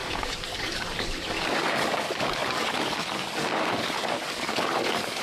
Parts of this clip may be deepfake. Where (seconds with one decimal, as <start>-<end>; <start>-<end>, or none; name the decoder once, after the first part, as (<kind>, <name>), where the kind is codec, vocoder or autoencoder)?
0.0-5.2 (codec, DAC)